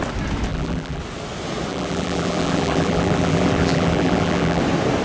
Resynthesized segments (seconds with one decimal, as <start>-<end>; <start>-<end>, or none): 0.5-1.0; 1.7-4.6